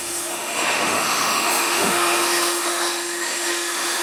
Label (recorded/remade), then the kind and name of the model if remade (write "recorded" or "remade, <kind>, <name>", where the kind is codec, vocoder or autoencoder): remade, autoencoder, DAC-VAE